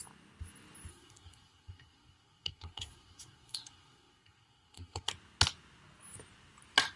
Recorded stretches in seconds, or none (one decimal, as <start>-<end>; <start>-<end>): 0.0-0.9; 5.1-7.0